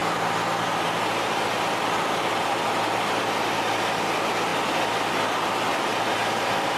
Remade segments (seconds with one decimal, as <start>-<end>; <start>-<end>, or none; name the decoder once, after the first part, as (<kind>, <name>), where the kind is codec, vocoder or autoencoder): none